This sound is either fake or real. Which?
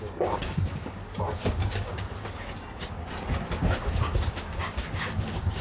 fake